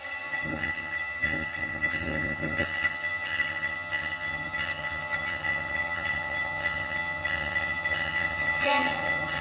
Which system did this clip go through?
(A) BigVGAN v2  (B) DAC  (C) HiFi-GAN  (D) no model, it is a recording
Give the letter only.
C